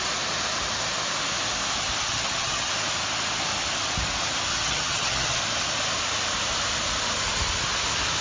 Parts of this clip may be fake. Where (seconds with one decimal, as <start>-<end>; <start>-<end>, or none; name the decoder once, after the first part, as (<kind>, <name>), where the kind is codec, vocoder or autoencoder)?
2.0-2.7 (vocoder, HiFi-GAN); 4.5-5.4